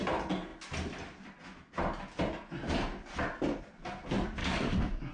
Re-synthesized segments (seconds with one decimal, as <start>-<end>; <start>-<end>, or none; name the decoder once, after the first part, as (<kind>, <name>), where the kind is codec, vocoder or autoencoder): 4.4-5.1 (codec, DAC)